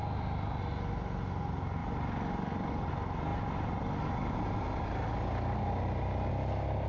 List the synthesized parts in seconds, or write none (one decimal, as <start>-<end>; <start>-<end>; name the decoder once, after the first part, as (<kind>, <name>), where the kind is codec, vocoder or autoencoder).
none